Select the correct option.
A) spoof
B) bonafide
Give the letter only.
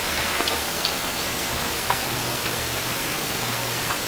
A